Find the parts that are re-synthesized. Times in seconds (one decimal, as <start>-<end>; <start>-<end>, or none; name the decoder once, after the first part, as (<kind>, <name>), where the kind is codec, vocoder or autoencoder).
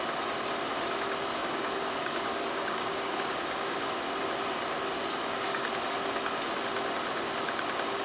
1.4-3.9 (codec, DAC); 5.0-5.7